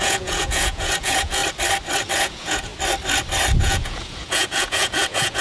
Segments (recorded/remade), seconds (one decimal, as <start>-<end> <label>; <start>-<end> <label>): 0.0-1.4 remade; 1.4-2.2 recorded; 2.2-2.7 remade; 2.7-3.6 recorded; 3.6-5.4 remade